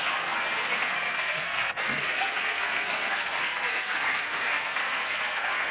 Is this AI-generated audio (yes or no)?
yes